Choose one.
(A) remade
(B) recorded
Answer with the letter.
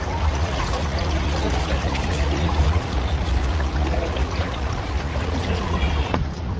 A